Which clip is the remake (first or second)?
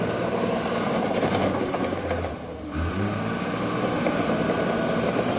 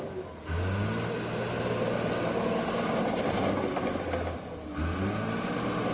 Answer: first